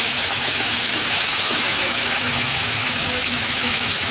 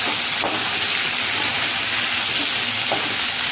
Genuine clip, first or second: second